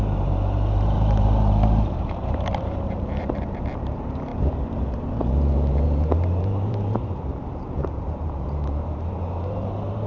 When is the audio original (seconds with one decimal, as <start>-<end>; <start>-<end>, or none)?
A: none